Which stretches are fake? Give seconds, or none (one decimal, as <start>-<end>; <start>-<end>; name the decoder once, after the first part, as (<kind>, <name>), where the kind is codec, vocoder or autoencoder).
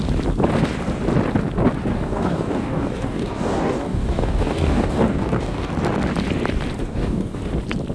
1.9-5.7 (codec, DAC); 6.8-7.4